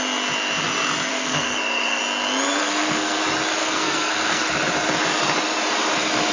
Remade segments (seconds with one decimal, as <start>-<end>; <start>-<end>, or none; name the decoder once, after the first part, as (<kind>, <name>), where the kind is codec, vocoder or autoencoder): 1.1-2.0 (codec, SNAC); 2.6-3.2; 3.6-4.5